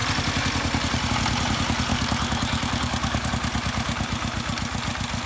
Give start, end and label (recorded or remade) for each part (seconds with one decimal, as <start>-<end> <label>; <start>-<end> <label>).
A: 0.0-1.9 recorded; 1.9-3.3 remade; 3.3-5.3 recorded